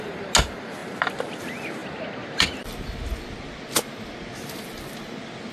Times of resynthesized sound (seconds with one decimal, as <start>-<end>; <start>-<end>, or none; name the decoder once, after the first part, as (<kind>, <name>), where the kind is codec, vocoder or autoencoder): none